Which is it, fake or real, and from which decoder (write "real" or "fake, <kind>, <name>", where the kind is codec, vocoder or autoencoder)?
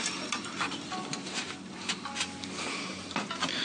real